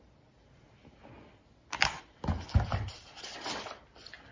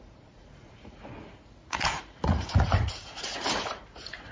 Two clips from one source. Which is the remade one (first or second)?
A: second